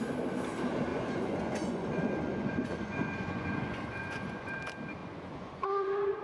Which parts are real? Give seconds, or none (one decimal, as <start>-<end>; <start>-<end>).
0.0-0.9; 4.6-5.0